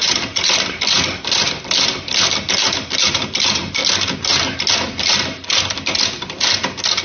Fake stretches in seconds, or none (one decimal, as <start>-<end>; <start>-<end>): 0.0-2.4